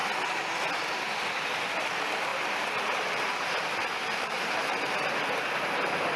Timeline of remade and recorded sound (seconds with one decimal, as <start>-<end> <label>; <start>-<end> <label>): 0.0-2.3 recorded; 2.3-6.2 remade